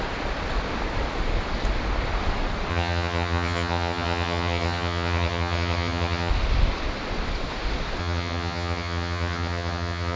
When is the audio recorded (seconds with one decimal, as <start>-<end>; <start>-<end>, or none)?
0.0-2.7; 6.3-8.0